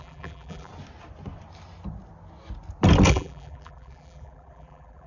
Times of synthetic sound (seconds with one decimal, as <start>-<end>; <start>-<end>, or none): 0.0-0.7; 3.1-5.1